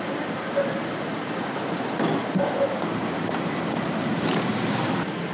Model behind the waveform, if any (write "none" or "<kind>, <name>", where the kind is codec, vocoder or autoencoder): none